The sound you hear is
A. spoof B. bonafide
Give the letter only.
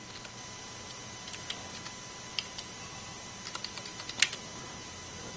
B